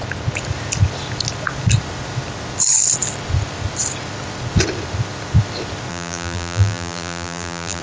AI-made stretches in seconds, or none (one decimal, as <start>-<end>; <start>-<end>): 5.9-7.8